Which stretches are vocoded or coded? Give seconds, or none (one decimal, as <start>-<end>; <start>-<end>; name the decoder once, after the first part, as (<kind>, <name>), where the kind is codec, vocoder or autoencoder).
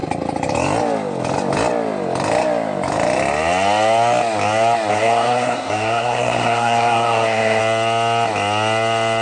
4.9-7.6 (codec, SNAC)